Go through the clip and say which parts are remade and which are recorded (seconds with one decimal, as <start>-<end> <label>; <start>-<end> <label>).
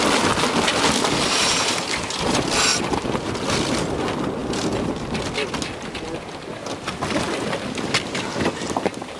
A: 0.0-2.7 recorded; 2.7-3.3 remade; 3.3-4.4 recorded; 4.4-5.2 remade; 5.2-9.2 recorded